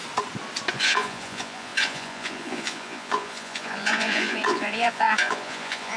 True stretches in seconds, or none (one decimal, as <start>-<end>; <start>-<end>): 0.0-0.7